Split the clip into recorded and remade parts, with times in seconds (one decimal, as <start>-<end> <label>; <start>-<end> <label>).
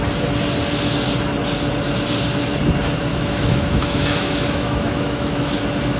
0.0-3.1 recorded; 3.1-5.6 remade; 5.6-6.0 recorded